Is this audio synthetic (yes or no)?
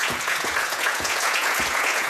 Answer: yes